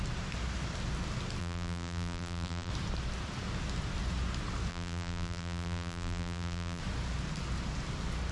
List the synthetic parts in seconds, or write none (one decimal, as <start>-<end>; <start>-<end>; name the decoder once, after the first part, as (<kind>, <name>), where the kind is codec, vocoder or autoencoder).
1.4-2.7 (vocoder, BigVGAN v2); 4.7-6.8